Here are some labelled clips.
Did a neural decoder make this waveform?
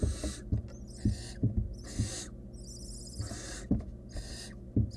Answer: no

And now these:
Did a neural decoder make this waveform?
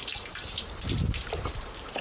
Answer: yes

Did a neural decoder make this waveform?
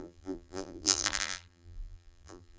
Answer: yes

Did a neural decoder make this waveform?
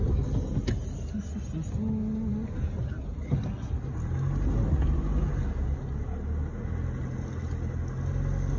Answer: no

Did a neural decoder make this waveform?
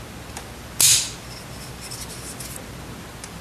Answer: no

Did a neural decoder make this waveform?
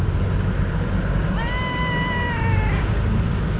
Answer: no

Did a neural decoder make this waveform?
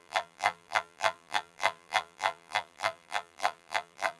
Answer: yes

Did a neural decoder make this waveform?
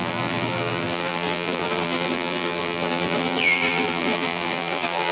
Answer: yes